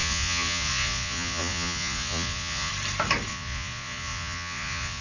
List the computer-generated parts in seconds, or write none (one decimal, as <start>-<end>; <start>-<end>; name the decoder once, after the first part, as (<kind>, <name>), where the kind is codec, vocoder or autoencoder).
0.0-2.7 (vocoder, Vocos); 3.3-5.0